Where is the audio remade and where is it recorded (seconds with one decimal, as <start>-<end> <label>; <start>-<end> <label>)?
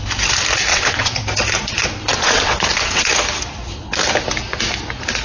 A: 0.0-0.7 recorded; 0.7-1.2 remade; 1.2-2.1 recorded; 2.1-3.1 remade; 3.1-5.2 recorded